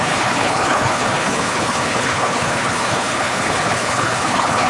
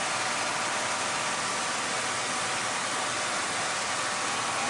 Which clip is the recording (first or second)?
second